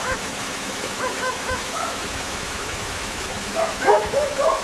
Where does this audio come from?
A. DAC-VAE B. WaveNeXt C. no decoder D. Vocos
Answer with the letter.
A